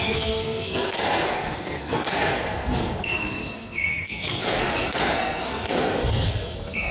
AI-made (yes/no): yes